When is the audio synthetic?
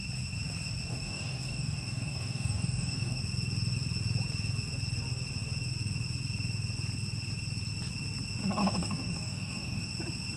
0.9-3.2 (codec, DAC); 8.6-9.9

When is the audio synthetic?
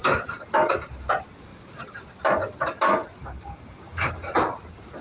3.2-4.1 (codec, DAC)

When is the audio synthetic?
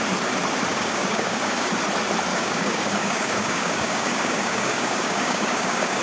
0.7-1.7 (codec, DAC); 2.3-6.0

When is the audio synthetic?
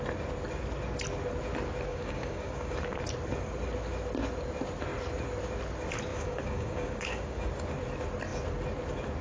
1.9-3.0 (codec, DAC); 6.1-7.5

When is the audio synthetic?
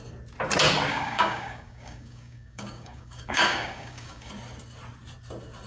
0.9-4.3 (codec, DAC)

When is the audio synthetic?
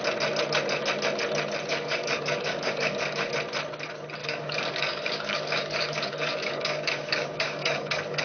1.7-3.3 (codec, DAC); 4.2-8.2